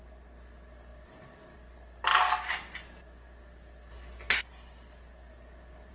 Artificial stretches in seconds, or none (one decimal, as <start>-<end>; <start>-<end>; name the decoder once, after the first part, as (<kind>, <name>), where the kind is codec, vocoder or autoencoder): none